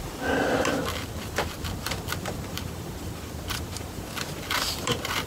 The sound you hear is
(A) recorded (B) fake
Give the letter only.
B